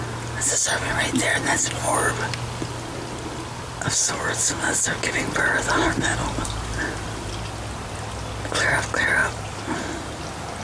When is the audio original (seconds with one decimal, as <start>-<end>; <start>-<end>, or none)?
0.0-6.2; 7.3-9.2; 10.2-10.6